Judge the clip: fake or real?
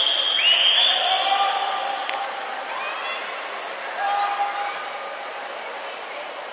real